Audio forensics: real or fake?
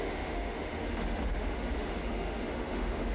fake